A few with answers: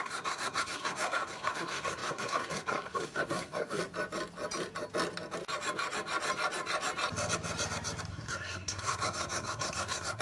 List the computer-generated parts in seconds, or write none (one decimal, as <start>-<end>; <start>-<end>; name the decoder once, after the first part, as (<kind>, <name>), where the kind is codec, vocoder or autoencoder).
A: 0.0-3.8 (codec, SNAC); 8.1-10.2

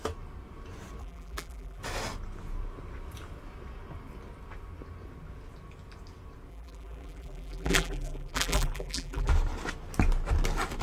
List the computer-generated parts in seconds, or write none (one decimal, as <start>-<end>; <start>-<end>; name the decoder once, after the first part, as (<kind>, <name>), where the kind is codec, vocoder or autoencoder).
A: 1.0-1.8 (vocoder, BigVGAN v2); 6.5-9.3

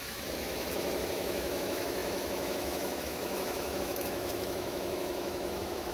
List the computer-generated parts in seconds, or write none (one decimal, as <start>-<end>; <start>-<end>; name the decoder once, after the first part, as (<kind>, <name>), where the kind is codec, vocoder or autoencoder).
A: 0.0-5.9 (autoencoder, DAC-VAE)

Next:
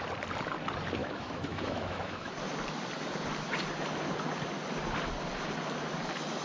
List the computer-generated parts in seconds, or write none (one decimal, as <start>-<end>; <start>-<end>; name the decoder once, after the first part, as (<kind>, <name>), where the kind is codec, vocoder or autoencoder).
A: 1.0-2.3 (autoencoder, DAC-VAE)